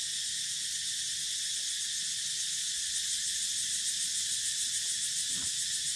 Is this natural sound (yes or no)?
yes